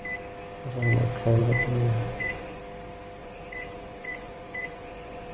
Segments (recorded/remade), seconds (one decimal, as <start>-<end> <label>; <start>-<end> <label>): 0.0-1.4 recorded; 1.4-2.6 remade; 2.6-3.2 recorded; 3.2-5.3 remade